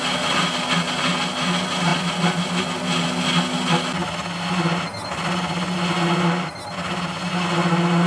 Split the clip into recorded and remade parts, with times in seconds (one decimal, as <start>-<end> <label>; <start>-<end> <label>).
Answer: 0.0-8.1 recorded